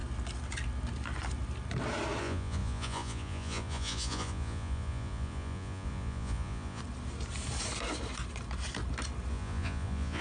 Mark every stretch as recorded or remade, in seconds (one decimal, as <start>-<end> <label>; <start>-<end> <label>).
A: 0.0-2.2 recorded; 2.2-6.8 remade; 6.8-9.3 recorded; 9.3-10.2 remade

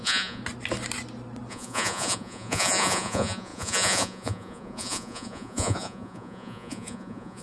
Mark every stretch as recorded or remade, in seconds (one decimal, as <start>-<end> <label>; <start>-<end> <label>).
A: 0.0-0.4 remade; 0.4-1.5 recorded; 1.5-7.4 remade

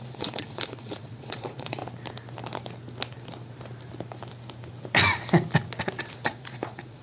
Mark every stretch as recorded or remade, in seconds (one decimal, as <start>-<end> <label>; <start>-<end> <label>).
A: 0.0-1.8 remade; 1.8-6.0 recorded; 6.0-7.0 remade

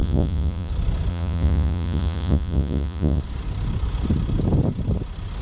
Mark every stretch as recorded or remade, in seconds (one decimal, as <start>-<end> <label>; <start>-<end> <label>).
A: 0.0-0.7 remade; 0.7-1.1 recorded; 1.1-3.2 remade; 3.2-5.4 recorded

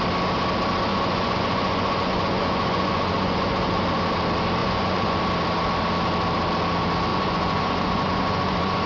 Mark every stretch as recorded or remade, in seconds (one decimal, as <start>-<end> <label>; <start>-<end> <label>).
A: 0.0-0.9 recorded; 0.9-3.8 remade; 3.8-4.6 recorded; 4.6-5.2 remade; 5.2-7.1 recorded; 7.1-8.9 remade

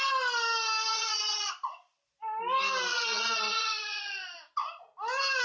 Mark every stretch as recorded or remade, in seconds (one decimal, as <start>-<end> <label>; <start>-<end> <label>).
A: 0.0-0.9 recorded; 0.9-1.5 remade; 1.5-2.9 recorded; 2.9-4.0 remade; 4.0-5.4 recorded

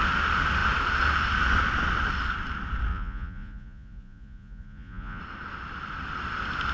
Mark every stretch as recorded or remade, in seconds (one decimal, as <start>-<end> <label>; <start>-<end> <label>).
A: 0.0-2.9 recorded; 2.9-5.2 remade; 5.2-6.7 recorded